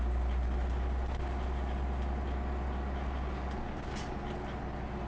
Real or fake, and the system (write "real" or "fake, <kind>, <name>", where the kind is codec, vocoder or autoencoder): real